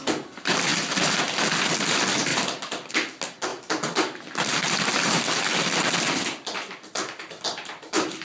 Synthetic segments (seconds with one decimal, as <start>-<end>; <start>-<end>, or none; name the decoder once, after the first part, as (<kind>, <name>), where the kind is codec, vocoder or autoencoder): 2.3-2.9 (vocoder, BigVGAN v2); 3.5-4.2